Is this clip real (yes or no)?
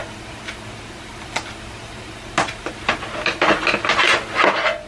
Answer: yes